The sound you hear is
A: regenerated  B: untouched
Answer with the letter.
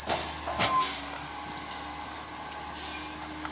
B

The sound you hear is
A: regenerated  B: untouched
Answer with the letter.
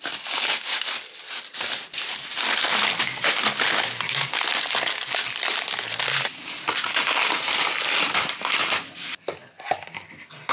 B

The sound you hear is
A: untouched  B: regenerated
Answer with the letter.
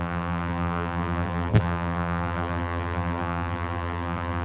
B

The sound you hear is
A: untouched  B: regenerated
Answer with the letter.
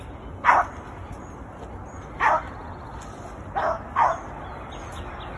A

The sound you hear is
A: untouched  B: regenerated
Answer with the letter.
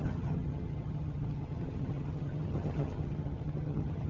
B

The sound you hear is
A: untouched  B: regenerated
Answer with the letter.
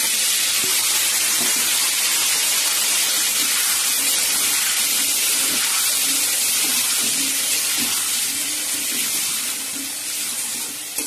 A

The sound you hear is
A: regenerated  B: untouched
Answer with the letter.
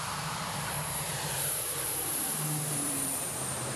A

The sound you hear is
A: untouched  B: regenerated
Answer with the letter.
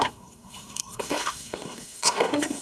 B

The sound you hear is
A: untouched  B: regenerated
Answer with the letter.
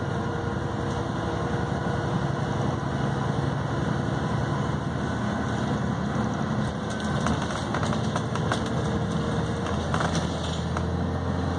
A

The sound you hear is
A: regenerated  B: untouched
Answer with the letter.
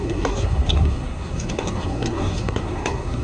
A